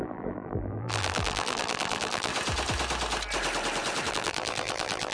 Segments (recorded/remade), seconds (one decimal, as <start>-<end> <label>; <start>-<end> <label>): 0.0-2.3 remade; 2.3-4.1 recorded; 4.1-5.1 remade